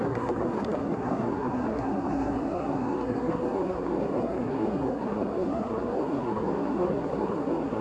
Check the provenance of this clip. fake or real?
fake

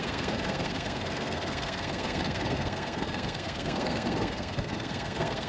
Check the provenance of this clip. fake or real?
fake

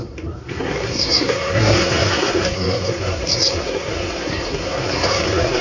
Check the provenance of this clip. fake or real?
fake